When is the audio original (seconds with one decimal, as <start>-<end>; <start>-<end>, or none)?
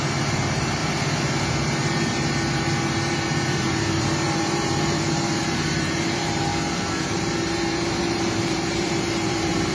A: 0.8-1.5; 6.5-7.0